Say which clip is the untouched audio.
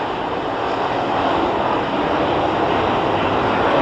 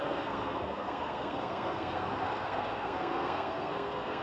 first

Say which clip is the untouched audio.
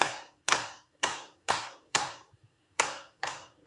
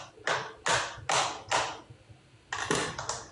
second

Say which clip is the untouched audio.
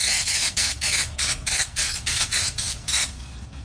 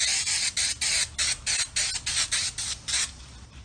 second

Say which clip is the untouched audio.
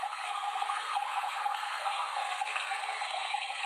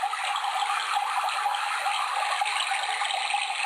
second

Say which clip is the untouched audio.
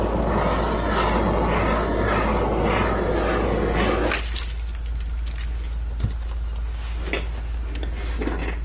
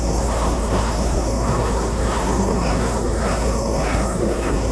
first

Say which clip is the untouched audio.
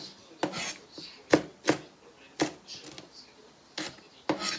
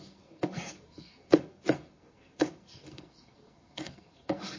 first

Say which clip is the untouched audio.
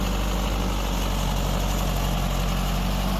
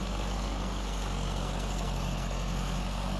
first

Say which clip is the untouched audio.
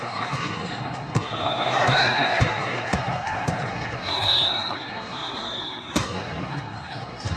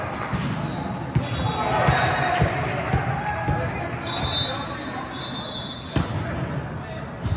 second